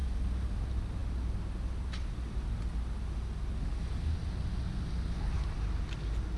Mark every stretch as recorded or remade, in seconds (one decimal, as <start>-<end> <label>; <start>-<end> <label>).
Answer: 0.0-6.4 recorded